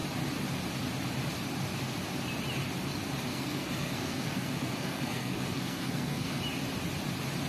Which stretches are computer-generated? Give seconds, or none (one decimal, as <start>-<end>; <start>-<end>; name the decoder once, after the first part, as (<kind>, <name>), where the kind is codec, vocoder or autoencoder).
3.3-6.4 (codec, SNAC)